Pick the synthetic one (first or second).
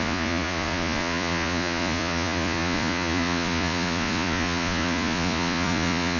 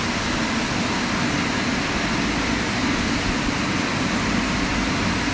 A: first